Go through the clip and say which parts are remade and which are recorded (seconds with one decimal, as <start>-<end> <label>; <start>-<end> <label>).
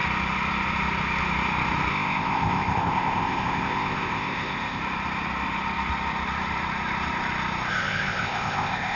0.0-1.9 recorded; 1.9-4.8 remade; 4.8-7.7 recorded; 7.7-9.0 remade